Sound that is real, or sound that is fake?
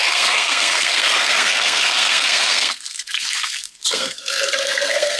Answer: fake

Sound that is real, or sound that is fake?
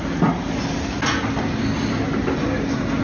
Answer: real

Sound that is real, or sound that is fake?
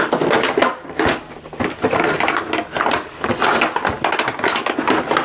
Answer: real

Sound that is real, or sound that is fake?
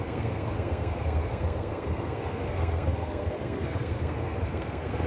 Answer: fake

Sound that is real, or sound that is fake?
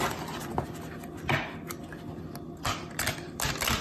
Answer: real